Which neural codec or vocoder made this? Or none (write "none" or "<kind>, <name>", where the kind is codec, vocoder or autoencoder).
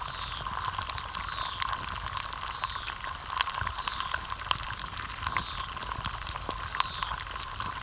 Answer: none